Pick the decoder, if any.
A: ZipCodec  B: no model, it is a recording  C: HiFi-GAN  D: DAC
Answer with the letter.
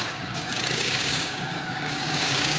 D